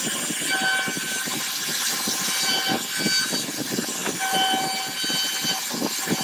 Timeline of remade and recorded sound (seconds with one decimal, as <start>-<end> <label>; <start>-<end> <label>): 0.0-6.2 recorded